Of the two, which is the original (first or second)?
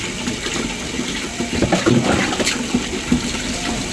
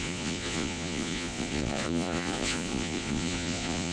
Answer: first